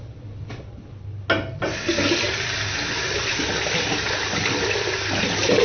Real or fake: real